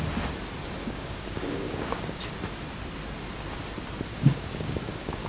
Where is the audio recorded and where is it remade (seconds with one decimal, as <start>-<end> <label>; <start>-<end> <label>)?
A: 0.0-0.8 recorded; 0.8-2.3 remade; 2.3-4.1 recorded; 4.1-5.3 remade